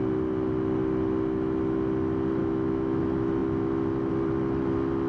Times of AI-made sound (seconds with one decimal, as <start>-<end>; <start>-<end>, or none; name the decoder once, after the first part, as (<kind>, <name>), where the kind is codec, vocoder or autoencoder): 2.4-3.0 (autoencoder, DAC-VAE)